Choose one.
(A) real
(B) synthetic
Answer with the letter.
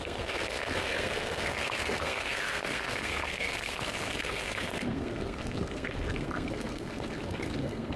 B